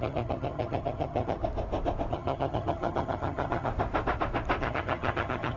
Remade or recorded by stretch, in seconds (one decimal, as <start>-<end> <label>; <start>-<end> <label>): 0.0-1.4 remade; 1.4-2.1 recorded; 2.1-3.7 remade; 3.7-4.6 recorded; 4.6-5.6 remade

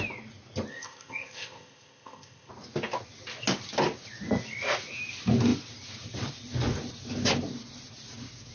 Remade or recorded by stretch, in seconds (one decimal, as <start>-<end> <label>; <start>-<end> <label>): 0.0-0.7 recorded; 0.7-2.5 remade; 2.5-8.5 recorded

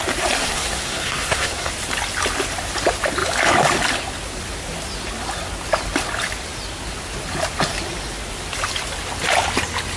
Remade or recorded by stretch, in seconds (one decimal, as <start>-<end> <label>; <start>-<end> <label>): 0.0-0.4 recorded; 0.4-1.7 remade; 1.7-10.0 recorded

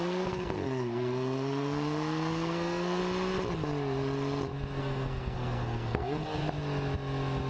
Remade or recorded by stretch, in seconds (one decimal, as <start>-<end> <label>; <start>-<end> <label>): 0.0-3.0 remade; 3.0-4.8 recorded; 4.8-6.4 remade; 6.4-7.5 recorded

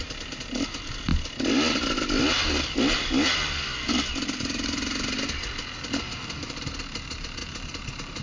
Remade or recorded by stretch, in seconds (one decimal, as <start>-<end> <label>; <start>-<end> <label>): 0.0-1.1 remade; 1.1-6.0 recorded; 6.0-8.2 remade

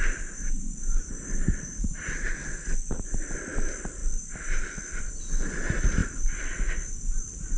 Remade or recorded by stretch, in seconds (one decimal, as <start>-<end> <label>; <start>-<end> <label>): 0.0-4.0 recorded; 4.0-5.2 remade; 5.2-7.6 recorded